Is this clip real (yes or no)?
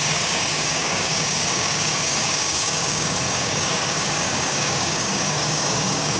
no